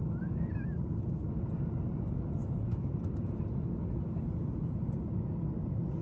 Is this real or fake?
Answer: real